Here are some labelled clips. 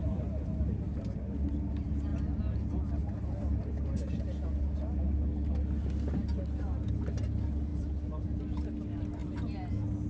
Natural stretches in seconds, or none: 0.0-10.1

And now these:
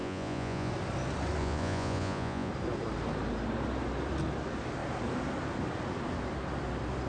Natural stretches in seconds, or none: 0.7-1.4; 2.5-7.1

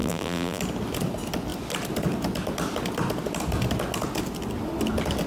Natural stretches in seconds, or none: 0.6-5.3

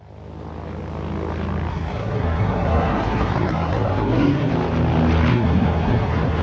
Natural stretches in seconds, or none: 0.0-1.7; 4.5-5.3